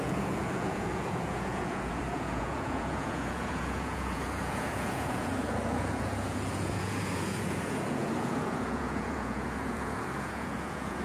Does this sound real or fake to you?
fake